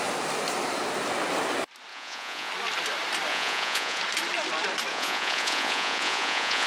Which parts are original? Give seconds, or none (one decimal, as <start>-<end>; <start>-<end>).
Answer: 0.0-1.9; 2.5-3.3; 4.0-4.9